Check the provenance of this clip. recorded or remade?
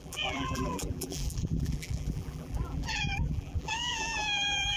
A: remade